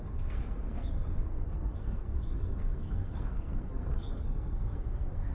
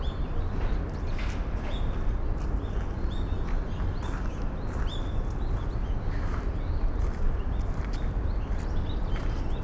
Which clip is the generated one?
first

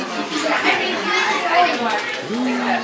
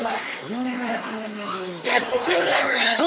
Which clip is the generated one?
second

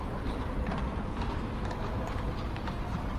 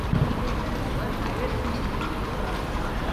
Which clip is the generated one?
first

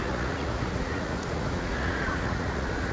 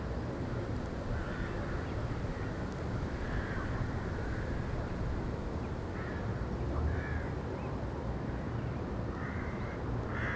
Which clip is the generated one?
first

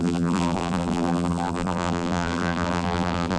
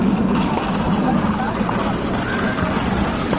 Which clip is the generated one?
first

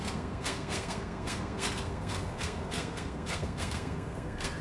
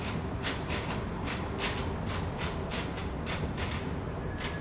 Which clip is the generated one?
first